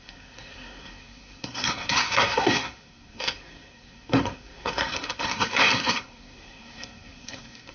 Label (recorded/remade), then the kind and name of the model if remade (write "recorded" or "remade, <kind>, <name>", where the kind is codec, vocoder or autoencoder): remade, codec, SNAC